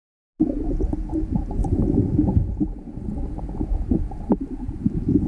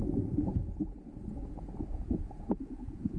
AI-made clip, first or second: second